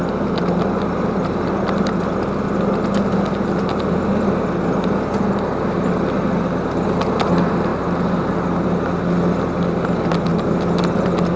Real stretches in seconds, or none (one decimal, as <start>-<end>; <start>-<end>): 0.0-11.4